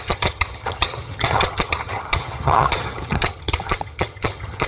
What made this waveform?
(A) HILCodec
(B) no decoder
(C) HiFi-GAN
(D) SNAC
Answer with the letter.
C